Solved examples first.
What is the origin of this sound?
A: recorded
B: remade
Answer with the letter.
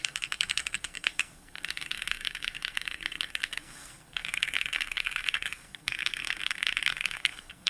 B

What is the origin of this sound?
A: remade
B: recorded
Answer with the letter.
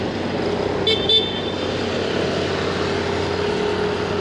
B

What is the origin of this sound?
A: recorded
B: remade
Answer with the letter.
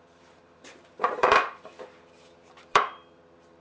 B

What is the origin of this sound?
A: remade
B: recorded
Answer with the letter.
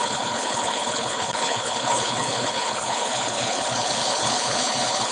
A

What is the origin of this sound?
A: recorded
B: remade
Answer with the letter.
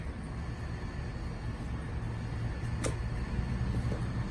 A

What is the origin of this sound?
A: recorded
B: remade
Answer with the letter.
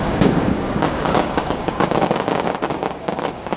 B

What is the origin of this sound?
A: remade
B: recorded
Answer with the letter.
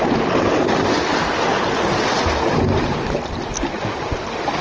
B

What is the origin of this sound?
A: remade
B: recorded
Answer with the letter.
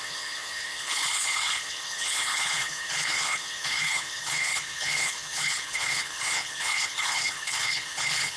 A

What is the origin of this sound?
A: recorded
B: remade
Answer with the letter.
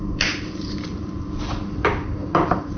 B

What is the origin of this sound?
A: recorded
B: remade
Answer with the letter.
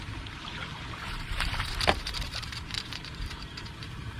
B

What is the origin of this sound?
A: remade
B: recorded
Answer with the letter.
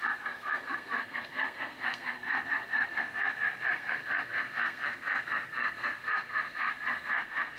A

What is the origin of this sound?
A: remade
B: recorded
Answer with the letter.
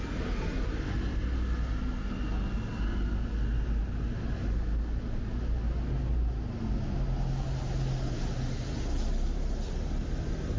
B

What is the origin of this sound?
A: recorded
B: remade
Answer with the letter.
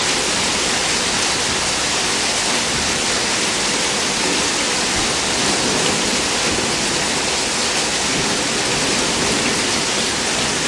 A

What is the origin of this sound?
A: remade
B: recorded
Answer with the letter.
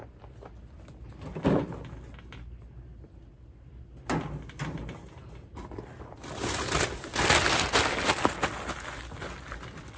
B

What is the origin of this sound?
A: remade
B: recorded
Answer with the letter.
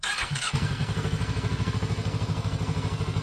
A